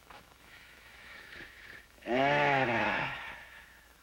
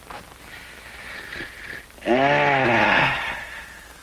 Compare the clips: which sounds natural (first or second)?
second